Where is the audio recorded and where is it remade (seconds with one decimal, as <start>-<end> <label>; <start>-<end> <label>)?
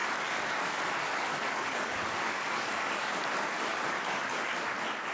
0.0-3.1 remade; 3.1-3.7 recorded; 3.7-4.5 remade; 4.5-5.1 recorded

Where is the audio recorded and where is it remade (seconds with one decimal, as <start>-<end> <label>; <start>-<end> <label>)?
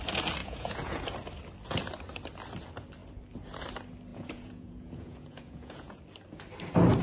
0.0-0.4 recorded; 0.4-1.0 remade; 1.0-4.1 recorded; 4.1-6.0 remade; 6.0-7.0 recorded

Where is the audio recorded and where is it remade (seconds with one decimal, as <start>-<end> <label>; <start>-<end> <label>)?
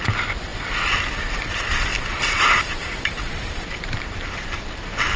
0.0-1.9 recorded; 1.9-5.2 remade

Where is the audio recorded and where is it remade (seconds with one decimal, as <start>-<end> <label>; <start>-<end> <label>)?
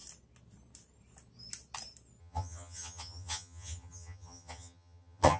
0.0-2.2 recorded; 2.2-5.4 remade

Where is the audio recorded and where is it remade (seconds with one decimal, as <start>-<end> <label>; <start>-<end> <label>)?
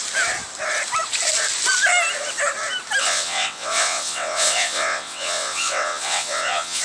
0.0-3.0 recorded; 3.0-6.8 remade